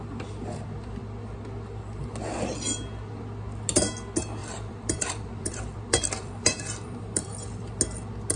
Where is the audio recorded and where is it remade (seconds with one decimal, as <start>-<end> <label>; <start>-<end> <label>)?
0.0-4.4 recorded; 4.4-7.6 remade; 7.6-8.4 recorded